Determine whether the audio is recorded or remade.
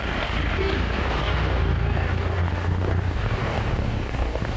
remade